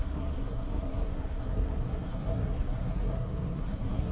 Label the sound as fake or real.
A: fake